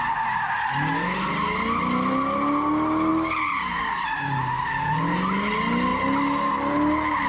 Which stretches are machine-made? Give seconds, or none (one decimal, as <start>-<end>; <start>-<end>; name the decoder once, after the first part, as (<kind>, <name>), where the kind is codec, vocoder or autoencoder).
none